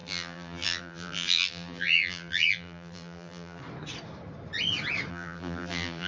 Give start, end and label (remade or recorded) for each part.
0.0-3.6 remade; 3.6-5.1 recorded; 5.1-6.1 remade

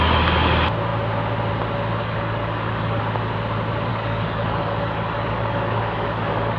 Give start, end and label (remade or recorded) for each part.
0.0-2.0 recorded; 2.0-3.0 remade; 3.0-3.9 recorded; 3.9-6.6 remade

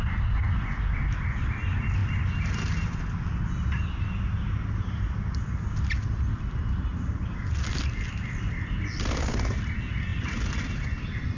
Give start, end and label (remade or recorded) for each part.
0.0-11.4 recorded

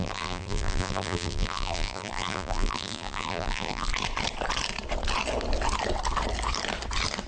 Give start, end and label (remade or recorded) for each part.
0.0-3.9 remade; 3.9-7.3 recorded

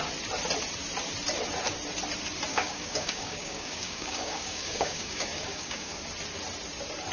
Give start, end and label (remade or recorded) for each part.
0.0-2.5 recorded; 2.5-6.0 remade; 6.0-7.1 recorded